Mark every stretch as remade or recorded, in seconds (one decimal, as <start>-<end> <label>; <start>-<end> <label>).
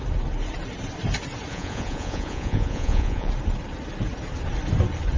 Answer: 0.0-1.5 recorded; 1.5-3.3 remade; 3.3-5.2 recorded